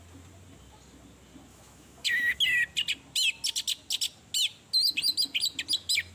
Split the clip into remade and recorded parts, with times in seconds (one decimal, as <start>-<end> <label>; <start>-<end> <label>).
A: 0.0-1.5 recorded; 1.5-2.4 remade; 2.4-6.1 recorded